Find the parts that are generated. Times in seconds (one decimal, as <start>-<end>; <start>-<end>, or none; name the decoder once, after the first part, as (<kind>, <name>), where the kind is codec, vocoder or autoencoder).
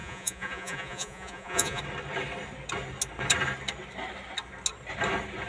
0.0-1.8 (vocoder, Vocos)